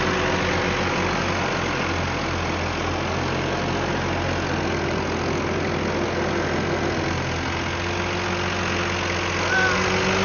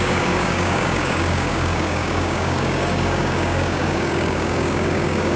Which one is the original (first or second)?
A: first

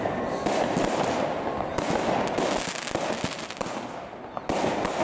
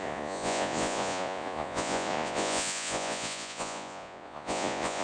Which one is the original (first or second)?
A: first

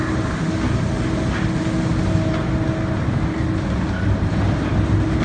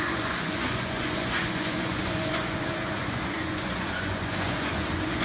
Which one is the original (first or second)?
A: first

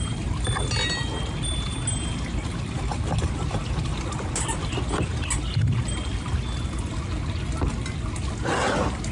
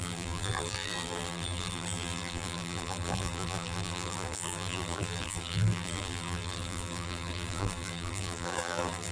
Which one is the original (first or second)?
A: first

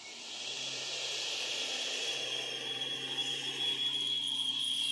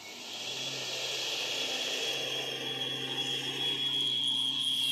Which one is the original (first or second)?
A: second